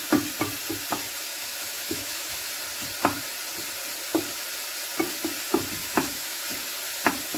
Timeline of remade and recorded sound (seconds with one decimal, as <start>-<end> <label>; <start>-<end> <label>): 0.0-1.3 recorded; 1.3-2.5 remade; 2.5-5.8 recorded; 5.8-6.4 remade; 6.4-7.4 recorded